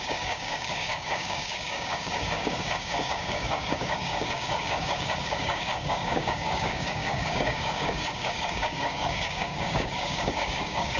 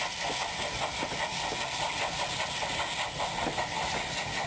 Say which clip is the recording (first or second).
second